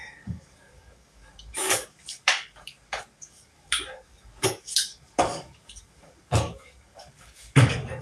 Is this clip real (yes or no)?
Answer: no